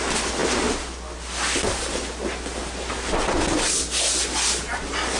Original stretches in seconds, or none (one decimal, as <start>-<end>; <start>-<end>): 0.0-5.2